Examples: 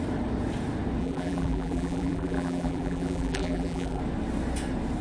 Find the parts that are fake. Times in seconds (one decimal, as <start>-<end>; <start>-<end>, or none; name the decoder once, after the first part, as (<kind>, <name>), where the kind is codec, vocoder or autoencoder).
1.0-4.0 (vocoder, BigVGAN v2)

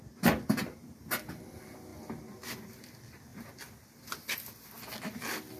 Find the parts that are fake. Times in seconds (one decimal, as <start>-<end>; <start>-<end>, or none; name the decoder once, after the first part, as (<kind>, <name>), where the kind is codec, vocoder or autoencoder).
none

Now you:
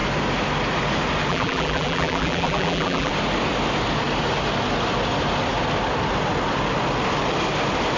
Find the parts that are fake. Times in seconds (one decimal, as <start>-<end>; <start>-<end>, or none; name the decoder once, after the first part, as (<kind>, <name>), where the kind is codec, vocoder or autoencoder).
1.3-3.1 (vocoder, BigVGAN v2)

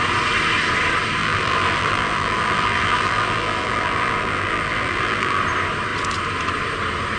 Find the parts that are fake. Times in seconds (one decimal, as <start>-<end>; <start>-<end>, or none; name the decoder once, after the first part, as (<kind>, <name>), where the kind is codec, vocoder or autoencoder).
1.2-5.4 (vocoder, BigVGAN v2)